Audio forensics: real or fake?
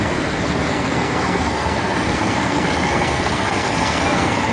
fake